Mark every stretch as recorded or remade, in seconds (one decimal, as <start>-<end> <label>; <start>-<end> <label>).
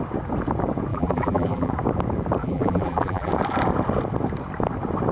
0.0-0.9 recorded; 0.9-1.7 remade; 1.7-2.4 recorded; 2.4-3.3 remade; 3.3-5.1 recorded